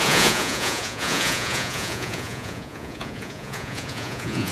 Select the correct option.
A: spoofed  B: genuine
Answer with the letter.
A